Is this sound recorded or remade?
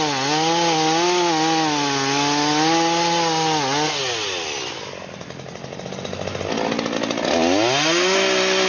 recorded